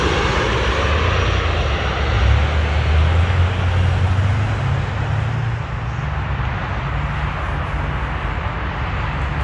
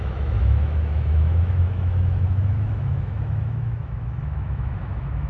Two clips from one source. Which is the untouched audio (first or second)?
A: first